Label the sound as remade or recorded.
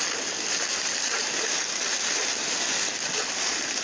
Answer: recorded